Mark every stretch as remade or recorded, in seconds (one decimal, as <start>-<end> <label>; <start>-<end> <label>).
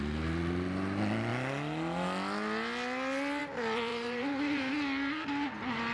0.0-3.9 recorded; 3.9-4.7 remade; 4.7-5.9 recorded